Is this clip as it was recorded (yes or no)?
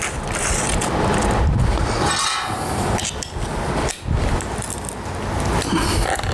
yes